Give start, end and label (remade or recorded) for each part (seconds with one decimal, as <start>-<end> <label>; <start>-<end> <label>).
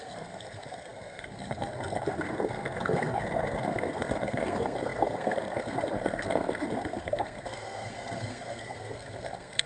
0.0-9.7 remade